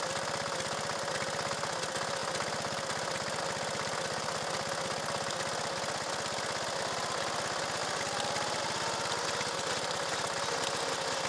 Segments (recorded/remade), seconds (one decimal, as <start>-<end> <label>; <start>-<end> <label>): 0.0-11.3 recorded